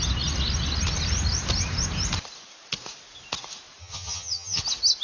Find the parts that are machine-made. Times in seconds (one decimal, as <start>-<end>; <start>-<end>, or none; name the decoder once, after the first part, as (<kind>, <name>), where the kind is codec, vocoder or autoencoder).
3.8-4.6 (vocoder, HiFi-GAN)